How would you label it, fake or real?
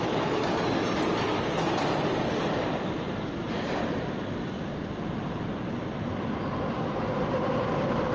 real